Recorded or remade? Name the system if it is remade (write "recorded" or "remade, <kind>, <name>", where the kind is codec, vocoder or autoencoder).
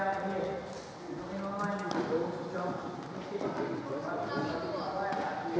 recorded